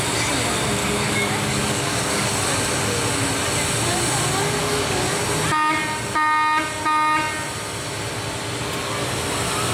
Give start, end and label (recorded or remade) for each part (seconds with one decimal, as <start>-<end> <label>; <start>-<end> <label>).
0.0-0.8 recorded; 0.8-2.3 remade; 2.3-4.6 recorded; 4.6-5.2 remade; 5.2-9.7 recorded